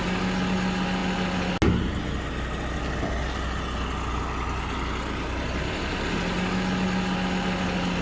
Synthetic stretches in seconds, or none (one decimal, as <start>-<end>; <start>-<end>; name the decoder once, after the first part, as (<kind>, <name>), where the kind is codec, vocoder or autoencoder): none